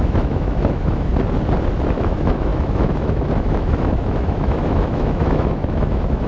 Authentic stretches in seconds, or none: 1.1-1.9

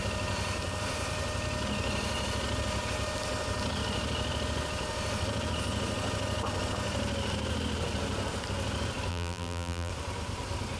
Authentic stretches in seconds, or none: 0.0-9.1; 9.9-10.8

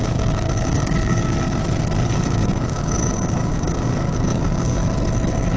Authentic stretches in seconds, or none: 1.6-2.2; 4.8-5.6

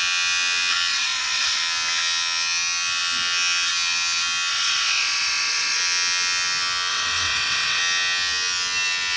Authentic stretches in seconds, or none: 0.0-0.9; 1.6-4.5; 5.8-6.9; 7.8-9.2

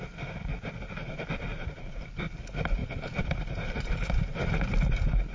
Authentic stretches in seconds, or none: 0.0-1.5; 2.1-2.8; 4.5-5.3

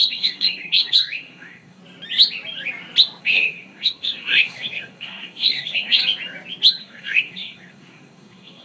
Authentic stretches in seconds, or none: 1.8-3.2; 6.0-6.8